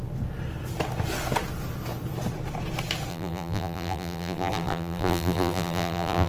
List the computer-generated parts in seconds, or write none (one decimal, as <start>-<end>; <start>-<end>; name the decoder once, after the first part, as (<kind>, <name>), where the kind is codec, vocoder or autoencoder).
3.1-6.3 (vocoder, BigVGAN v2)